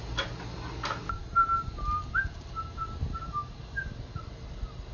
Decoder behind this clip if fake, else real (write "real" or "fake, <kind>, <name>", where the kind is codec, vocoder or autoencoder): real